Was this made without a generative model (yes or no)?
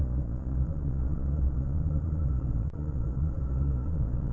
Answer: no